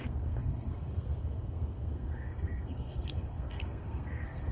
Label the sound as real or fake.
fake